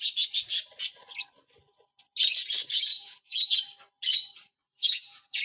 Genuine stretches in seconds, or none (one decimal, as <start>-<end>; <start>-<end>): 0.0-2.9; 3.6-4.6